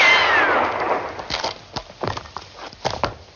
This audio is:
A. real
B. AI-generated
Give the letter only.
A